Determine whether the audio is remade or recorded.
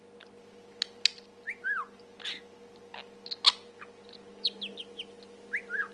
recorded